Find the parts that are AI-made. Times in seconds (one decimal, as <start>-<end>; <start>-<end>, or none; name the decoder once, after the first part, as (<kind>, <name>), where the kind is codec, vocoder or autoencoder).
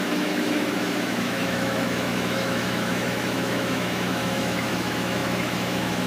0.0-6.1 (autoencoder, DAC-VAE)